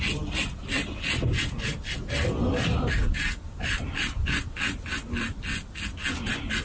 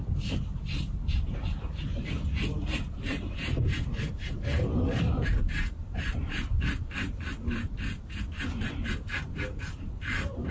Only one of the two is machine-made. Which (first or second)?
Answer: second